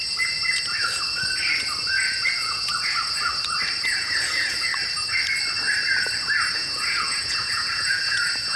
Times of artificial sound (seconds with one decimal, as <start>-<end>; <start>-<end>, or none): 1.9-3.3; 3.9-4.7; 6.5-8.6